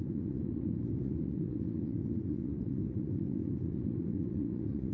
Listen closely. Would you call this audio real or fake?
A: fake